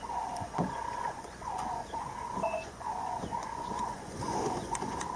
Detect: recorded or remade remade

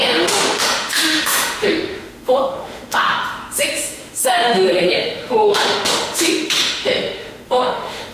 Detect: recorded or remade remade